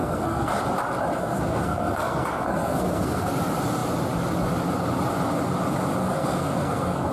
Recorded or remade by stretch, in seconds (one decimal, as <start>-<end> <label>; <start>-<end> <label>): 0.0-0.6 remade; 0.6-1.2 recorded; 1.2-3.3 remade; 3.3-6.0 recorded; 6.0-7.1 remade